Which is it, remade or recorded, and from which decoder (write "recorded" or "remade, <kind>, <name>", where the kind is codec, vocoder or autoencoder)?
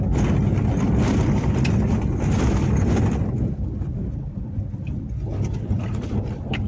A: recorded